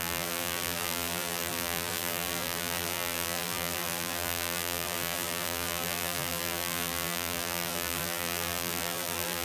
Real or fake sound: fake